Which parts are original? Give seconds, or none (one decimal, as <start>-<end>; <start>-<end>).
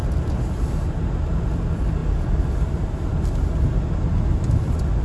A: 0.0-5.0